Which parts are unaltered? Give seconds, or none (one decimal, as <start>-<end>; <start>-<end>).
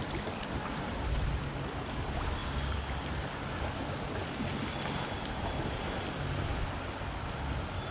0.0-7.9